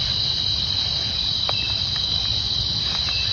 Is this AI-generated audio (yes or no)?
no